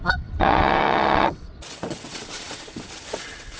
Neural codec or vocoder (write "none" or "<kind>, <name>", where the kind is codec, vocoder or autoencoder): vocoder, WaveNeXt